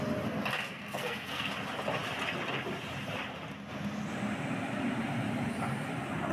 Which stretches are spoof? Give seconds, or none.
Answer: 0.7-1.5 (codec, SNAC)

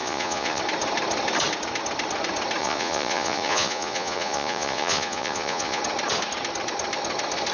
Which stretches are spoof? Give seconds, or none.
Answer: 0.0-0.6 (vocoder, Vocos); 2.6-5.8

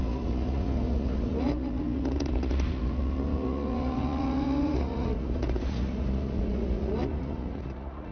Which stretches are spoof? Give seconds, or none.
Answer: 0.0-8.1 (vocoder, Vocos)

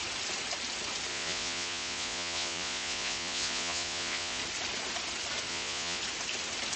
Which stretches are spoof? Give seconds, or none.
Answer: 1.1-4.4 (vocoder, Vocos); 5.5-6.0

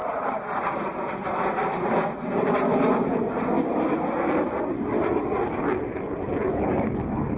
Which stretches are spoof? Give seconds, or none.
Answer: 6.5-7.4 (codec, DAC)

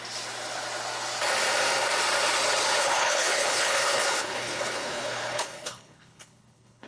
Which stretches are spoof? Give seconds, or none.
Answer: 2.8-6.9 (codec, HILCodec)

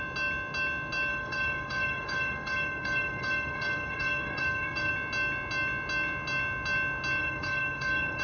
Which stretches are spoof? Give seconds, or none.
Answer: 1.1-4.9 (codec, DAC); 7.2-8.2